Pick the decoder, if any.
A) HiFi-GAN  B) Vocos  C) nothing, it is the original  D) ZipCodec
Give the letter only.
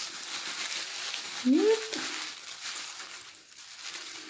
C